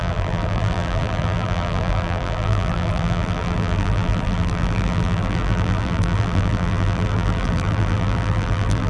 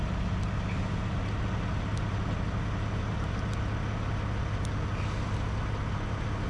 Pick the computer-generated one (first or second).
first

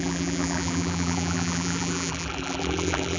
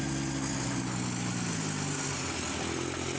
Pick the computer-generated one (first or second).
first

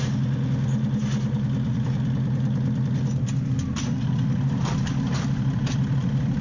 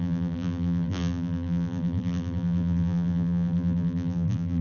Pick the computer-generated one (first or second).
second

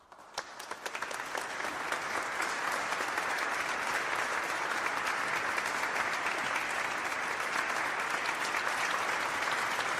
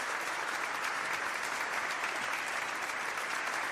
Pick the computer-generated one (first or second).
second